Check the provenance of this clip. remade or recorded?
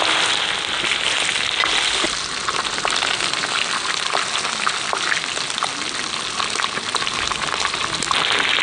recorded